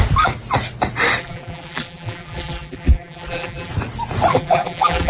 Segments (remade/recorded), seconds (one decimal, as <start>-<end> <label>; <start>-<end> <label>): 0.0-1.2 recorded; 1.2-3.7 remade; 3.7-4.3 recorded; 4.3-5.1 remade